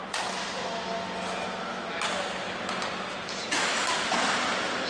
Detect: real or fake real